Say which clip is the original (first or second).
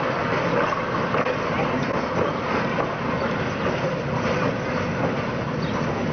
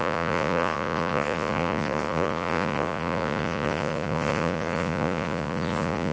first